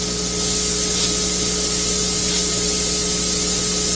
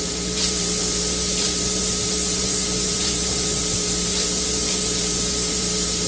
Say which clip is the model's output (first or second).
second